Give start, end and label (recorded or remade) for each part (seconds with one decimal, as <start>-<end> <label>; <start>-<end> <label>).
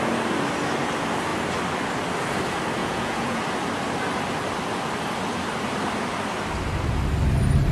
0.0-2.8 recorded; 2.8-3.4 remade; 3.4-7.7 recorded